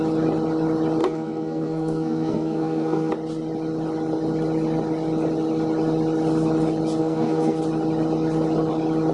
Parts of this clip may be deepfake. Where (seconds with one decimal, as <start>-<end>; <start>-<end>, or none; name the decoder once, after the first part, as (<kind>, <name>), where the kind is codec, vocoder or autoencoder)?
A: 1.0-3.1 (codec, SNAC); 7.0-7.6

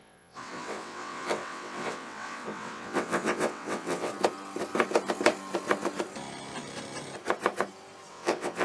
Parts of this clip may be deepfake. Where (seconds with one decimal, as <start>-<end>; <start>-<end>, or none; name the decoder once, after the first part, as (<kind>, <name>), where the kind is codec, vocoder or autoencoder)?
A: 0.0-4.1 (vocoder, WaveNeXt); 8.1-8.6

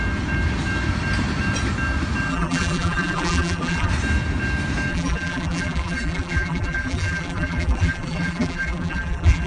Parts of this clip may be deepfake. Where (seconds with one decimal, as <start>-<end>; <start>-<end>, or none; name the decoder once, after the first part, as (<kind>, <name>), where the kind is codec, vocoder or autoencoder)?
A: 2.3-3.9 (vocoder, BigVGAN v2); 4.9-9.5

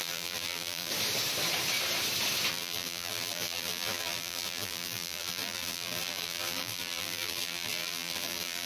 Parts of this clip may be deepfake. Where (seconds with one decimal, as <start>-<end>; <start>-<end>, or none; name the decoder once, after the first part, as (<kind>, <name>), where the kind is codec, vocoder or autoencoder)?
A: 0.0-0.9 (vocoder, BigVGAN v2); 2.5-8.7

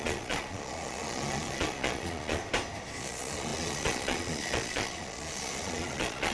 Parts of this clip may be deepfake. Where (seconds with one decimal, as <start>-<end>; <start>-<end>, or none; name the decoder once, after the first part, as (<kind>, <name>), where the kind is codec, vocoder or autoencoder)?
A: 0.0-2.4 (vocoder, Vocos); 3.0-6.3

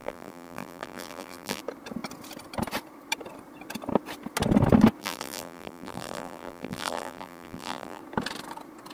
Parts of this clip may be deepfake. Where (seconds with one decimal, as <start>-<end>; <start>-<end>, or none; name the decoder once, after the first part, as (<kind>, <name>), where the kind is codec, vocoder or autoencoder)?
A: 0.0-1.6 (vocoder, BigVGAN v2); 5.0-8.0